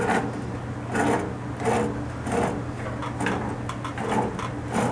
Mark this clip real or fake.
real